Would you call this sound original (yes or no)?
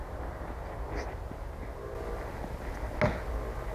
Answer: yes